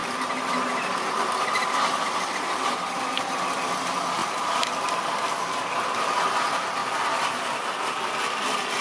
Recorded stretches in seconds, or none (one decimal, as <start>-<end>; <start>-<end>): 0.0-8.8